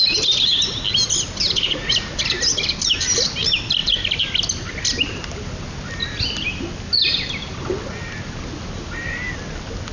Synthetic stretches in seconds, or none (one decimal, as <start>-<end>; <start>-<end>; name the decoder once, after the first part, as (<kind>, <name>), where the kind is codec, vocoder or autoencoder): none